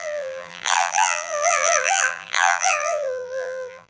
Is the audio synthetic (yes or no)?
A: yes